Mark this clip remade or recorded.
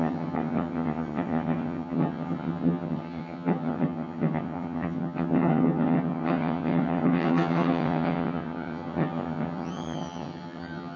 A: remade